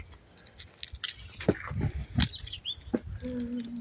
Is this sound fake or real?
real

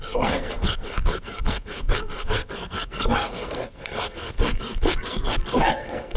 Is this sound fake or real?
fake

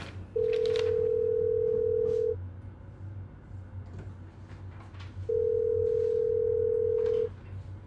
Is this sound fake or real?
real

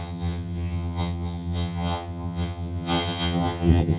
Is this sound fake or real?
fake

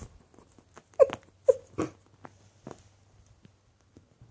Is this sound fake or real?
real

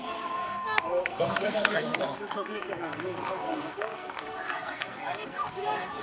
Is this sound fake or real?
fake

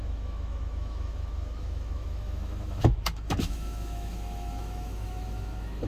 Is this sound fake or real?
fake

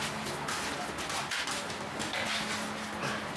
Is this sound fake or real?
real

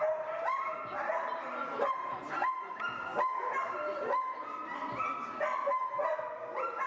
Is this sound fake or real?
real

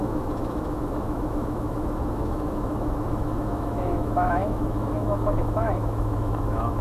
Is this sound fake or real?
fake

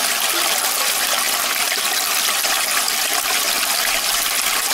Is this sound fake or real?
real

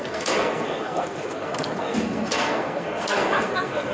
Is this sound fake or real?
fake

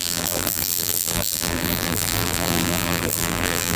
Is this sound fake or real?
fake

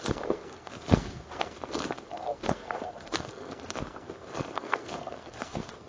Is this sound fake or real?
fake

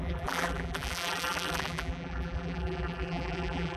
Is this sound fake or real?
fake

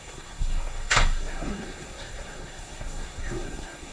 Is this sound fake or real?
fake